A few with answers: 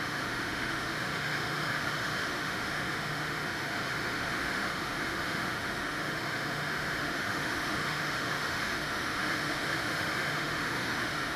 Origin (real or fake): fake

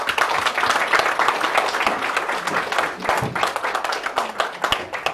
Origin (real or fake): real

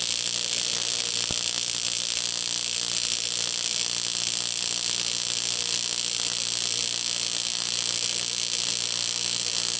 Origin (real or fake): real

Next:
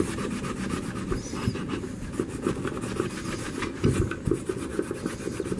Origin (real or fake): real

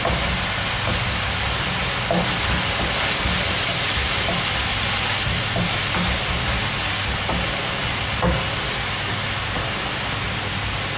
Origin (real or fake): real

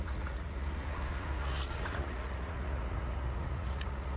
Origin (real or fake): fake